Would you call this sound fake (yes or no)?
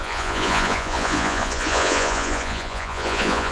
yes